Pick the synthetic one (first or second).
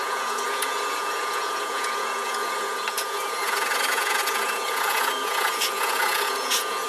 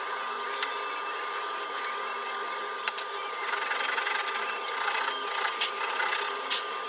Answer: first